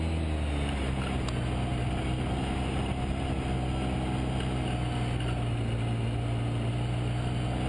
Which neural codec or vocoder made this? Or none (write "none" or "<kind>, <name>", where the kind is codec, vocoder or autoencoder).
none